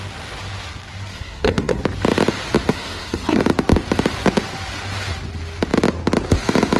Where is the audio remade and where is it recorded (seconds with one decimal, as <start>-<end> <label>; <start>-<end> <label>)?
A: 0.0-1.1 recorded; 1.1-1.8 remade; 1.8-2.7 recorded; 2.7-3.4 remade; 3.4-6.8 recorded